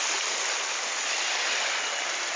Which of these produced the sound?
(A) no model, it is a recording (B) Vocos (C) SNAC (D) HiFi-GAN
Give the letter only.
A